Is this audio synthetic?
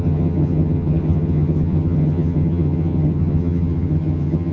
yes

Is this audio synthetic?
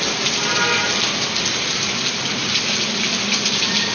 no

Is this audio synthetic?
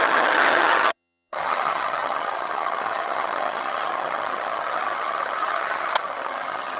yes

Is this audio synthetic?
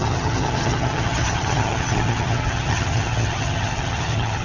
yes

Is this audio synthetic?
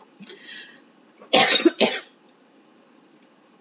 no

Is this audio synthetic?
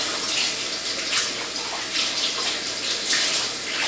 no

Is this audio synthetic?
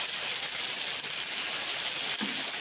no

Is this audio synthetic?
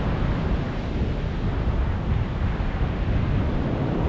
no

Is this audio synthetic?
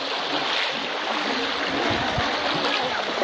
no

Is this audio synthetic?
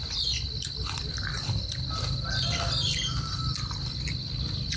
no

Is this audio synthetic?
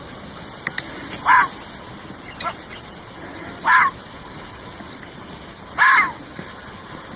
no